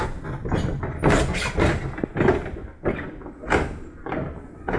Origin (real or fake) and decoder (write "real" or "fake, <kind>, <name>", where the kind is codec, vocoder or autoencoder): real